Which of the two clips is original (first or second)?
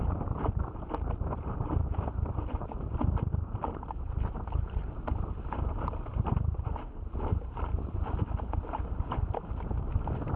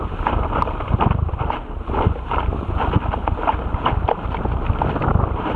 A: second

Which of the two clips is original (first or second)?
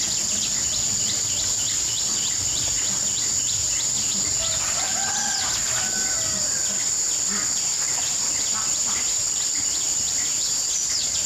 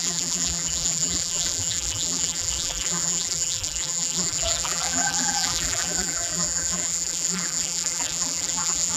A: first